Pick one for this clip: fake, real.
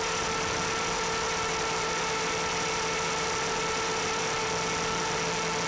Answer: real